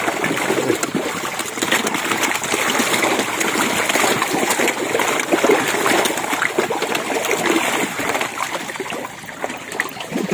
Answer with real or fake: real